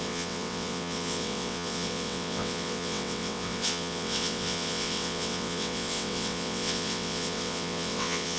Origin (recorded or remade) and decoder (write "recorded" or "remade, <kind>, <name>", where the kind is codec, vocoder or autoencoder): remade, vocoder, WaveNeXt